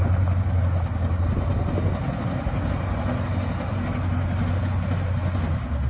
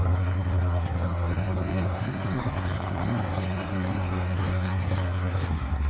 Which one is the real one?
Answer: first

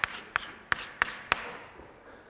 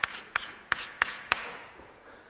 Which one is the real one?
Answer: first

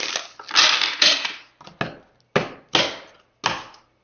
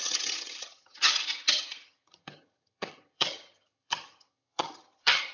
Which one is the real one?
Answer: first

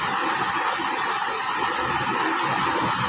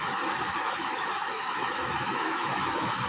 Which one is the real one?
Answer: first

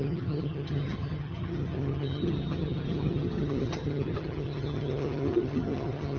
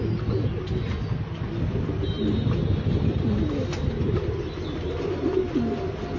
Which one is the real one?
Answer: second